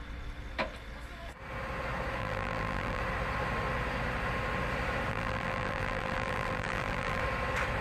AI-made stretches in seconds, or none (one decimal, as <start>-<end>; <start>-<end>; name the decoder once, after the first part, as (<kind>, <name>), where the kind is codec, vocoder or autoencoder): 2.2-3.0 (vocoder, BigVGAN v2); 5.1-7.2